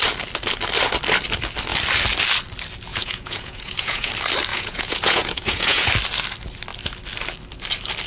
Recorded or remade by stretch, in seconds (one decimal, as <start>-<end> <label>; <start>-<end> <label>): 0.0-2.9 recorded; 2.9-4.1 remade; 4.1-4.5 recorded; 4.5-5.9 remade; 5.9-8.1 recorded